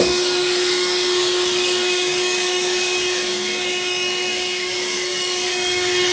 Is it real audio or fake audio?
fake